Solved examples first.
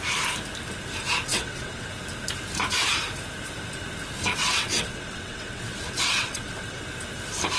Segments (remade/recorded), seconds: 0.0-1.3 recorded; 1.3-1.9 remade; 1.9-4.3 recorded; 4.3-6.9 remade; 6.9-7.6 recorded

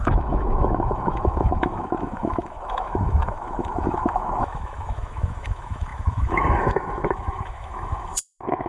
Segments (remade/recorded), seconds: 0.0-8.7 remade

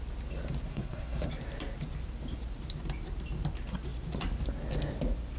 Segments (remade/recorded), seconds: 0.0-0.7 recorded; 0.7-1.3 remade; 1.3-5.4 recorded